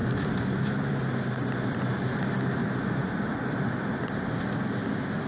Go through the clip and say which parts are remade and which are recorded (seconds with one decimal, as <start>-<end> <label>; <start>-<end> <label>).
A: 0.0-2.6 recorded; 2.6-4.3 remade; 4.3-5.3 recorded